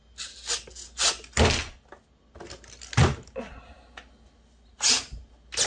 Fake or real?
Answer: real